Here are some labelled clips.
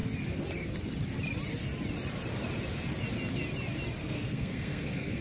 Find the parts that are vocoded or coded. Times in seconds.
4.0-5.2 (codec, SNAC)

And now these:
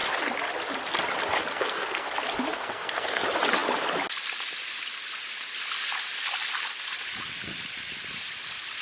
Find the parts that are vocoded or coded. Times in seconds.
1.5-2.1 (codec, SNAC); 2.5-3.2

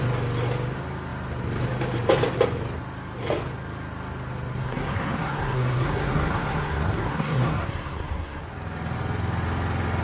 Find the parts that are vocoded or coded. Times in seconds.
4.6-8.4 (codec, SNAC)

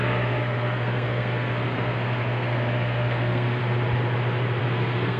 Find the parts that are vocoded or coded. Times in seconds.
0.0-3.6 (codec, SNAC); 4.6-5.2

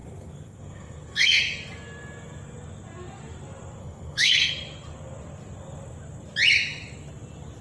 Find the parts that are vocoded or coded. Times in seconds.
0.0-1.4 (codec, SNAC); 3.8-4.5

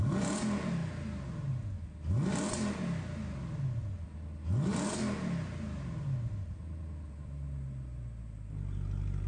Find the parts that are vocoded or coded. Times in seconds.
none

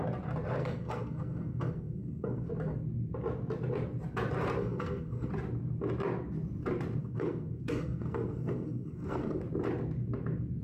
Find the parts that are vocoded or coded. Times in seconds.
0.6-2.5 (codec, SNAC); 4.6-5.3; 7.0-9.4

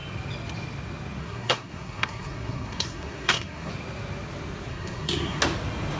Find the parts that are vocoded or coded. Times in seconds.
1.2-3.7 (codec, SNAC); 4.7-5.4